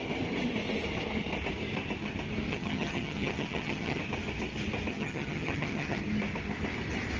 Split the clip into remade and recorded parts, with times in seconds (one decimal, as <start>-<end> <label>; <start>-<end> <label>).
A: 0.0-2.5 recorded; 2.5-4.0 remade; 4.0-4.9 recorded; 4.9-6.0 remade; 6.0-7.2 recorded

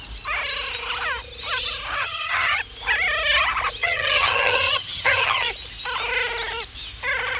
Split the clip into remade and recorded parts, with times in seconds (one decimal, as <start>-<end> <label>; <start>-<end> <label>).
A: 0.0-2.0 recorded; 2.0-2.6 remade; 2.6-3.8 recorded; 3.8-5.5 remade; 5.5-7.4 recorded

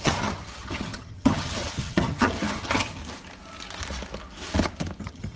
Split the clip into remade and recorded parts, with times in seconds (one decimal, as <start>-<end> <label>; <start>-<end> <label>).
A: 0.0-3.0 remade; 3.0-5.0 recorded; 5.0-5.4 remade